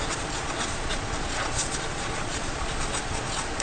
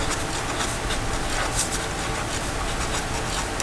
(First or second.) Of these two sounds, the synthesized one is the first